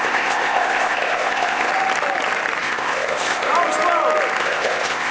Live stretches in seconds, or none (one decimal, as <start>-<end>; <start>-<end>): 1.7-2.6; 3.5-4.4